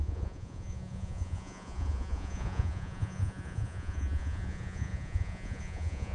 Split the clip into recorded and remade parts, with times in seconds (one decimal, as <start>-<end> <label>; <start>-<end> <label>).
0.0-6.1 remade

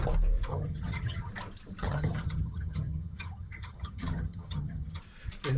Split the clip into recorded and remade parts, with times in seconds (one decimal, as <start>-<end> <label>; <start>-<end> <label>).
0.0-0.5 recorded; 0.5-1.3 remade; 1.3-1.8 recorded; 1.8-5.0 remade; 5.0-5.6 recorded

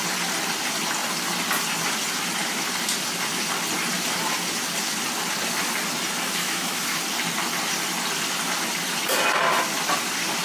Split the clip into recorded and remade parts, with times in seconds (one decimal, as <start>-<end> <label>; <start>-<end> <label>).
0.0-6.4 recorded; 6.4-7.0 remade; 7.0-10.4 recorded

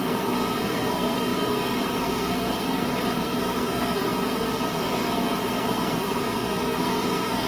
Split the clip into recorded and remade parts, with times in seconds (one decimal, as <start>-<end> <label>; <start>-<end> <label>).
0.0-7.5 remade

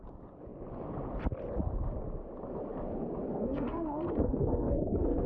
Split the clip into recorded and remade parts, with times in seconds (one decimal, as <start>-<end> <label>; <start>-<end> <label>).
0.0-3.3 recorded; 3.3-5.3 remade

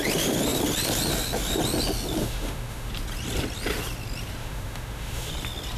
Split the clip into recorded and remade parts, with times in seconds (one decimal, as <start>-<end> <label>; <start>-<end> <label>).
0.0-2.2 recorded; 2.2-2.9 remade; 2.9-4.4 recorded; 4.4-5.3 remade; 5.3-5.8 recorded

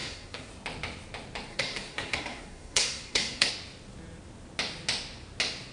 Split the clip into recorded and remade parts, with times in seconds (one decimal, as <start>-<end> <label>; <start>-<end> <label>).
0.0-0.5 remade; 0.5-1.5 recorded; 1.5-3.5 remade; 3.5-5.7 recorded

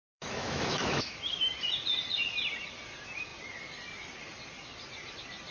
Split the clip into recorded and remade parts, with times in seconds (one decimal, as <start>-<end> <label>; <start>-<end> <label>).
0.0-1.4 remade; 1.4-5.5 recorded